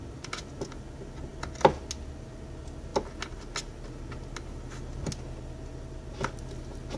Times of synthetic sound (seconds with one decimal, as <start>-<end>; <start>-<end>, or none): 1.3-1.8